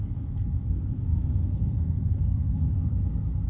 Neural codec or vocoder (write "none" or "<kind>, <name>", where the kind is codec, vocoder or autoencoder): codec, SNAC